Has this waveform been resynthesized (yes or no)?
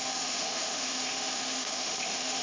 yes